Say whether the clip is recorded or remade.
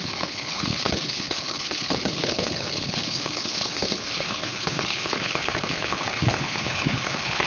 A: remade